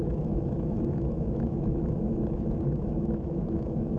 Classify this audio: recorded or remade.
remade